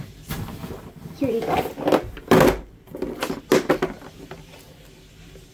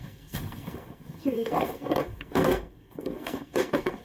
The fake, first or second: second